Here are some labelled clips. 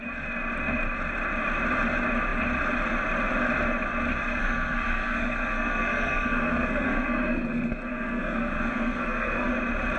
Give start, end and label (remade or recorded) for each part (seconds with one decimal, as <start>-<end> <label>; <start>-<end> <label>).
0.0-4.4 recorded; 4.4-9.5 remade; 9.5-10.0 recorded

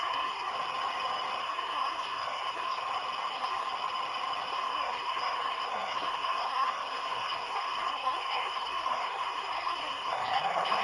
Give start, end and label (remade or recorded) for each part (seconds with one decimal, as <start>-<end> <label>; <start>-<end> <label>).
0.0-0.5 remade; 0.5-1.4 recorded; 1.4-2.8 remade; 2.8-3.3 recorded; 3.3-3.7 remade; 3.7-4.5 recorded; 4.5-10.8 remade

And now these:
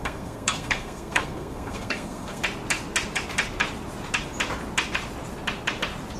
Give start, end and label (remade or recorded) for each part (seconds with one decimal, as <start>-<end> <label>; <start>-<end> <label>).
0.0-2.4 remade; 2.4-6.2 recorded